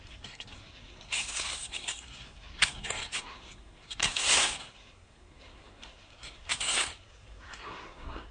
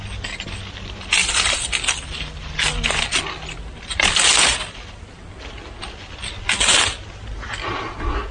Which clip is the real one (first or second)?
second